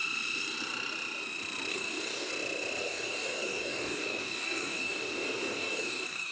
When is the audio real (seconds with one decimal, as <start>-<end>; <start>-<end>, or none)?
0.0-1.7; 2.3-2.8